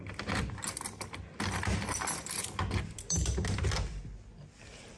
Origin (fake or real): real